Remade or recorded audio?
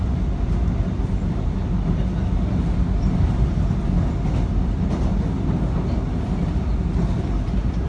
recorded